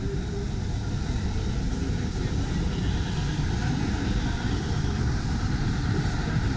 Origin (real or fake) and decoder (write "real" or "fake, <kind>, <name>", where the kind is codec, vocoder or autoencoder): real